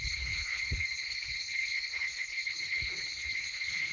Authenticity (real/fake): fake